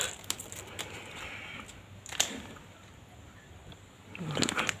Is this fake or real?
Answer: real